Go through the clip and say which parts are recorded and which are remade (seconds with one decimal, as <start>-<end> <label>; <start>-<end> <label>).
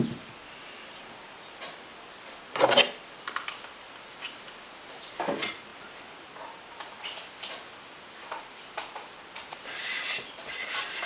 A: 0.0-11.1 recorded